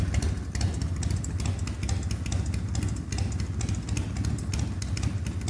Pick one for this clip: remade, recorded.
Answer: recorded